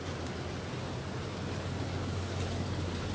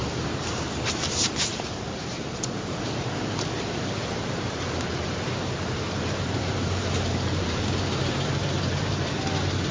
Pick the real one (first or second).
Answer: first